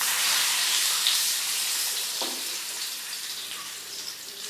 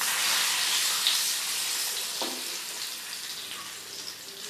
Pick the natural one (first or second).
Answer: second